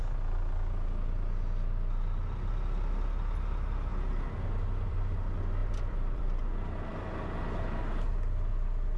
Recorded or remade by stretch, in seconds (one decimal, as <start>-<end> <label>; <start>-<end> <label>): 0.0-5.6 recorded; 5.6-6.4 remade; 6.4-9.0 recorded